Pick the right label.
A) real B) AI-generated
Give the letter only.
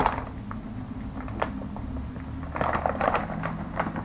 A